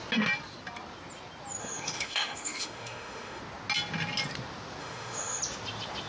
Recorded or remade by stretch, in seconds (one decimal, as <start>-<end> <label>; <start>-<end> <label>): 0.0-1.6 recorded; 1.6-3.4 remade; 3.4-4.8 recorded; 4.8-5.4 remade; 5.4-6.1 recorded